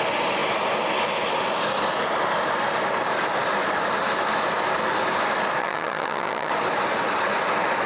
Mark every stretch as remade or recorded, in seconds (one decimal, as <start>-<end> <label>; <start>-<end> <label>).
0.0-5.6 recorded; 5.6-6.5 remade; 6.5-7.9 recorded